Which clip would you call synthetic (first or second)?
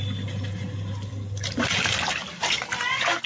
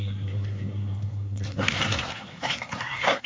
second